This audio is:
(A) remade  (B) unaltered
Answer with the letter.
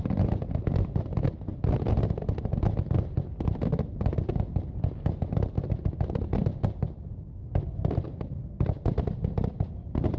B